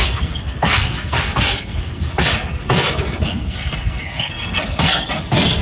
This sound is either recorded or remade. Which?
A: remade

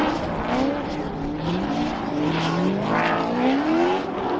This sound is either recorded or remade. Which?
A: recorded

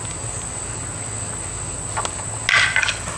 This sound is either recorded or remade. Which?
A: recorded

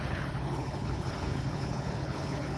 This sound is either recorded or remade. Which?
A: remade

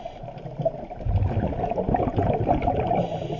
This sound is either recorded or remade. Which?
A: recorded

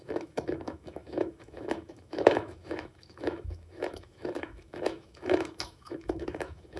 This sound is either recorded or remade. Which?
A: remade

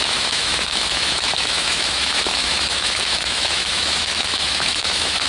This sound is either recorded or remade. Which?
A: remade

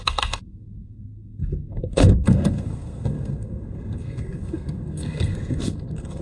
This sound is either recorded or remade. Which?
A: remade